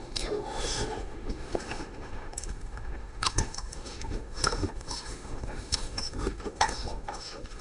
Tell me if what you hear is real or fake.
fake